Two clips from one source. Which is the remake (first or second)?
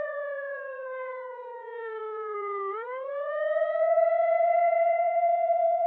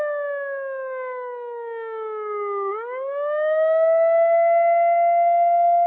first